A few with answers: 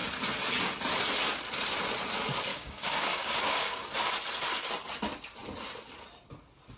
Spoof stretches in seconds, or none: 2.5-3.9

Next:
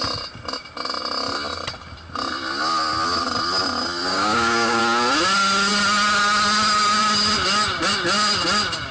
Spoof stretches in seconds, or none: 4.1-4.8

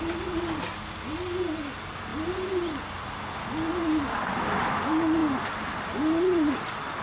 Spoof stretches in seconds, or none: none

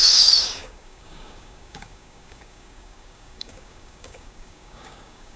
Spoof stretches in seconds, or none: 0.0-5.4

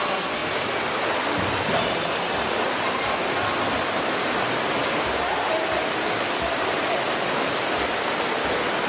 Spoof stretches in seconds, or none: none

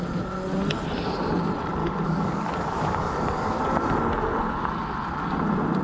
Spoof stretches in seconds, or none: 1.8-3.6